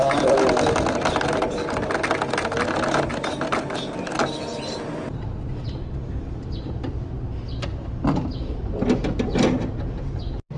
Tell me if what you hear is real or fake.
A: real